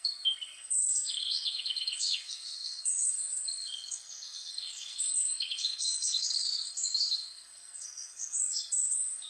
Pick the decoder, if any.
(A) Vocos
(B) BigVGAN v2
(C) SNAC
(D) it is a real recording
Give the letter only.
C